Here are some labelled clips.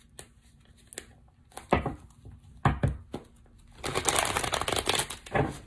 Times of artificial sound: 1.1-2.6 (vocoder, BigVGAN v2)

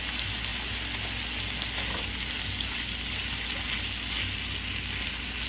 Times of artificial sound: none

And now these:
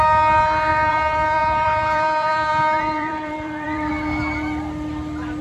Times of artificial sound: 0.7-3.9 (vocoder, BigVGAN v2)